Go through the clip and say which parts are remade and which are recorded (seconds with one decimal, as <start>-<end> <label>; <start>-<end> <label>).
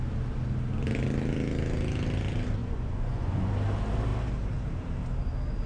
0.0-2.6 recorded; 2.6-3.5 remade; 3.5-5.7 recorded